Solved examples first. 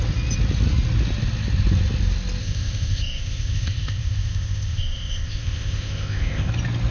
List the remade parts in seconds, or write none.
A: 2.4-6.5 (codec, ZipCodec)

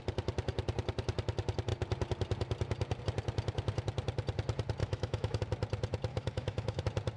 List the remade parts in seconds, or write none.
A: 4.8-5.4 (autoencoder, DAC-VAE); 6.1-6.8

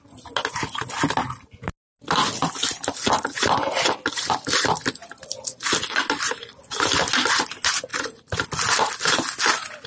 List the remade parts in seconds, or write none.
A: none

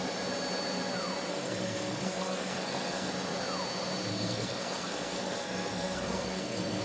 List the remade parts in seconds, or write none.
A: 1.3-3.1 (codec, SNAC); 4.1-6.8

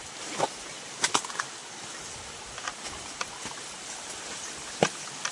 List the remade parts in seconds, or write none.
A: none